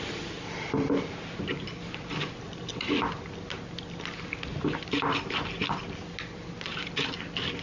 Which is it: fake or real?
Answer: real